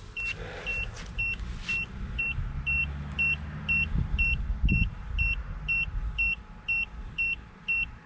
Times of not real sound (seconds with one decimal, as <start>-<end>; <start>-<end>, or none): none